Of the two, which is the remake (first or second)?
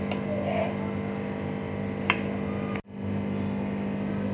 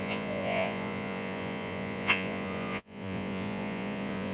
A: second